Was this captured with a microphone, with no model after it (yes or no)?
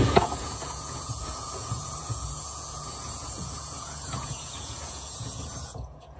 no